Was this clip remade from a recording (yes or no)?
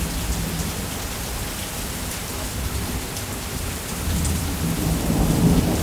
no